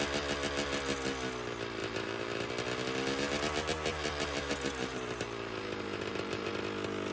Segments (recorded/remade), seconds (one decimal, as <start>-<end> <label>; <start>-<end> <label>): 0.0-1.8 recorded; 1.8-2.5 remade; 2.5-3.9 recorded; 3.9-6.5 remade; 6.5-7.1 recorded